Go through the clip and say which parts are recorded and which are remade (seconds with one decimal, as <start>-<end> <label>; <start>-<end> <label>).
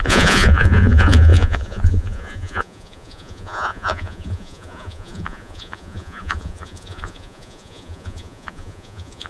0.0-9.3 remade